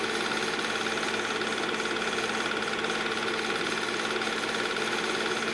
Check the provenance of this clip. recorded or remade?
recorded